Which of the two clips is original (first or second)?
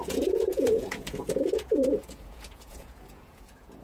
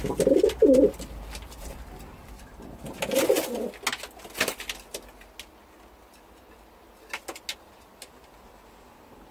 second